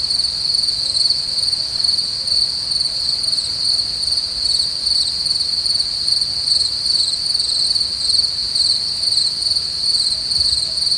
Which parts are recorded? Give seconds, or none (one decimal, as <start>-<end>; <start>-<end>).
0.0-11.0